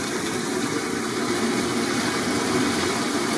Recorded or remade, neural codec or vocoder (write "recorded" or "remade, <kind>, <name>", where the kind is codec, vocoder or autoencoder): recorded